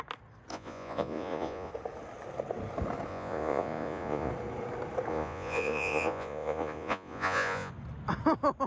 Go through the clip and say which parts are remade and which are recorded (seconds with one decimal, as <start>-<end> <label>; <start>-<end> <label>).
0.0-0.5 recorded; 0.5-1.7 remade; 1.7-3.1 recorded; 3.1-4.3 remade; 4.3-5.1 recorded; 5.1-7.7 remade; 7.7-8.7 recorded